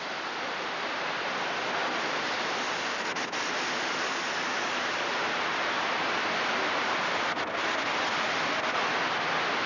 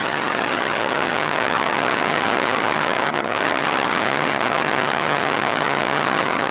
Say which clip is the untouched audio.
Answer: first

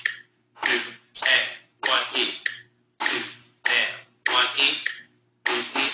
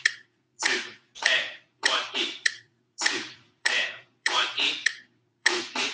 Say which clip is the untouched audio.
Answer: first